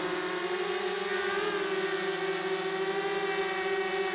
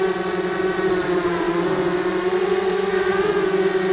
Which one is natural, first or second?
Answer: first